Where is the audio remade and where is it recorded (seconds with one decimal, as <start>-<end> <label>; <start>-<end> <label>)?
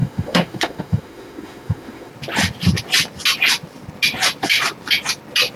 0.0-2.1 remade; 2.1-5.6 recorded